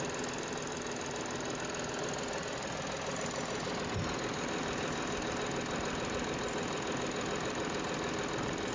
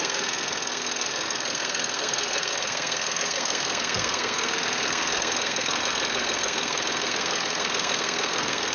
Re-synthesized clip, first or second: second